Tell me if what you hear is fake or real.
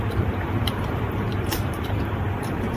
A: fake